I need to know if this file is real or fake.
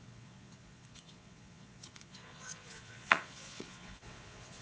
fake